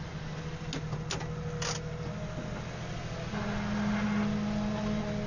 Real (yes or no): yes